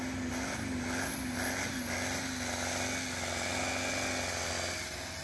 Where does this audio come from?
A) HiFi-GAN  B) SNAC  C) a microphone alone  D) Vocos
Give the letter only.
C